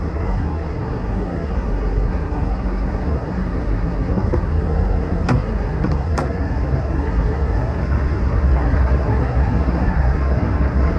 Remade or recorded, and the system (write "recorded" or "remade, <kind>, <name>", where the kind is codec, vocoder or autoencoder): remade, codec, SNAC